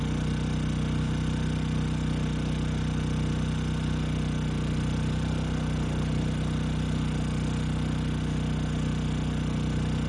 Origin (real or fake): real